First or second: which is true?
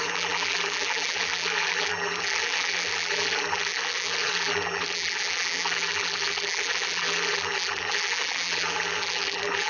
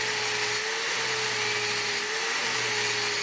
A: second